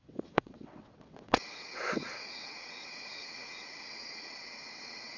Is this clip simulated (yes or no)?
yes